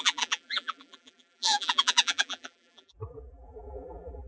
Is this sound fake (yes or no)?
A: yes